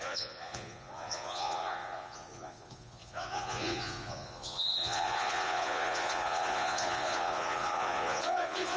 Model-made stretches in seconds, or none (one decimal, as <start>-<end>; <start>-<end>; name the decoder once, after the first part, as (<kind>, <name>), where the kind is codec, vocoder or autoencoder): 0.0-8.8 (vocoder, Vocos)